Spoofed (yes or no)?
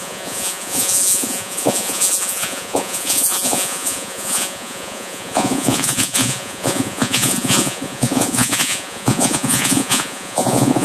yes